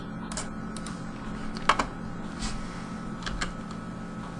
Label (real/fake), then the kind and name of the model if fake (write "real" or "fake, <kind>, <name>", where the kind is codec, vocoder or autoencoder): real